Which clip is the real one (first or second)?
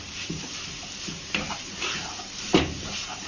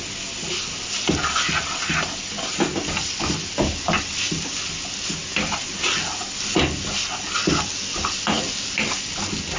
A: second